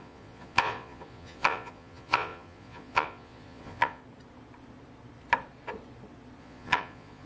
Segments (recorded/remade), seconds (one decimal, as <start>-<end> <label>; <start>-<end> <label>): 0.0-4.0 remade; 4.0-6.4 recorded; 6.4-7.3 remade